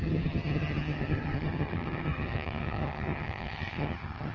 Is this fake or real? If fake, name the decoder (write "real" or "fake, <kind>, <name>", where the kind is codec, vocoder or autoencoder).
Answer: fake, vocoder, HiFi-GAN